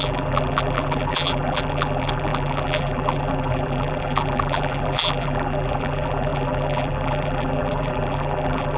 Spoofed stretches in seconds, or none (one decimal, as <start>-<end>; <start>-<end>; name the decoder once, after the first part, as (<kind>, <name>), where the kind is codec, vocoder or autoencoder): 0.0-8.8 (vocoder, BigVGAN v2)